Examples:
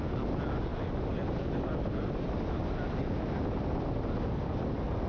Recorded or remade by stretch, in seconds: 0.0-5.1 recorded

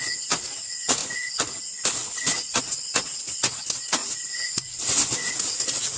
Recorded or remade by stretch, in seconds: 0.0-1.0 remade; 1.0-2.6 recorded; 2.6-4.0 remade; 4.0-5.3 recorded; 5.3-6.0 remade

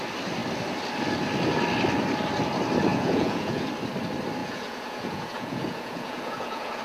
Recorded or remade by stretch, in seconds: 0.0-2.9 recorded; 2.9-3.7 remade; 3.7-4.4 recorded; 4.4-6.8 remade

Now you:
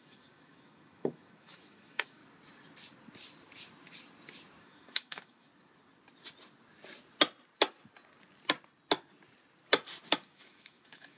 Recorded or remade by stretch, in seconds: 0.0-2.2 remade; 2.2-4.6 recorded; 4.6-5.5 remade; 5.5-10.1 recorded; 10.1-11.2 remade

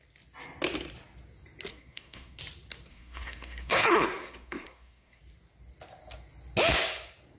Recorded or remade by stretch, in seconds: 0.0-1.7 recorded; 1.7-2.4 remade; 2.4-2.9 recorded; 2.9-5.2 remade; 5.2-7.4 recorded

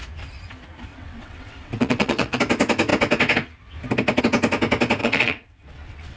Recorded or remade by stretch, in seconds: 0.0-0.9 recorded; 0.9-2.4 remade; 2.4-5.0 recorded; 5.0-6.2 remade

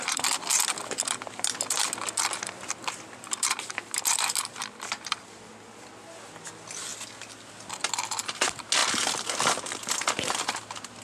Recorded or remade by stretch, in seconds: 0.0-11.0 recorded

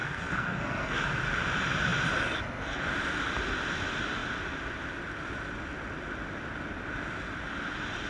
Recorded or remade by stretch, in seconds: 0.0-1.0 remade; 1.0-8.1 recorded